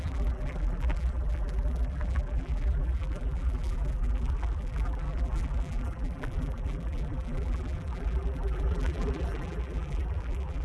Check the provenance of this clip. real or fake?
fake